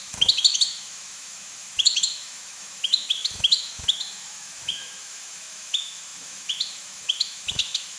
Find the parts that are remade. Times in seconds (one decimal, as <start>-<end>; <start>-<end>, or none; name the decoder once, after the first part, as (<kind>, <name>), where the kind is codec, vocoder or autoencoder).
0.0-8.0 (autoencoder, DAC-VAE)